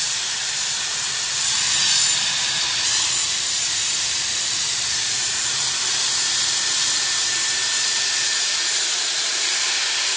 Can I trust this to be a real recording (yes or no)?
no